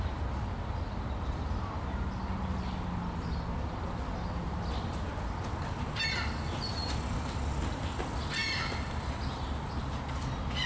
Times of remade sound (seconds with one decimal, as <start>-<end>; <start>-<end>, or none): none